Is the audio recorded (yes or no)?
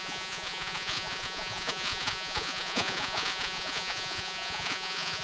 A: no